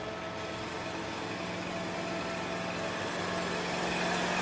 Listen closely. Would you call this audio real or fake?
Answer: real